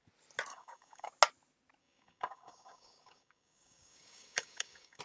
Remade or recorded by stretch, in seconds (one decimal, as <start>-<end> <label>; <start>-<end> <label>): 0.0-0.5 recorded; 0.5-1.1 remade; 1.1-1.8 recorded; 1.8-5.0 remade